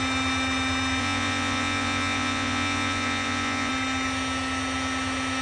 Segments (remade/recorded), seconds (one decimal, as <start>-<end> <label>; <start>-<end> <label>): 0.0-1.0 recorded; 1.0-3.7 remade; 3.7-5.4 recorded